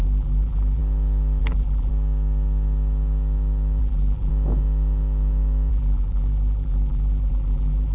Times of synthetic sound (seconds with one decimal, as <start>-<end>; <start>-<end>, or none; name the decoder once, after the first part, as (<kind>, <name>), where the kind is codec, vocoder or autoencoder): 0.0-0.8 (vocoder, BigVGAN v2); 1.4-1.9; 3.8-4.3; 5.7-7.9